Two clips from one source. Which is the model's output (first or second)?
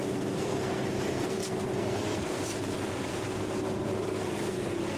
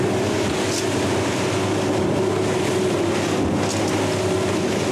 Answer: first